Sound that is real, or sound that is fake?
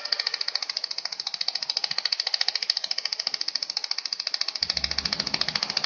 real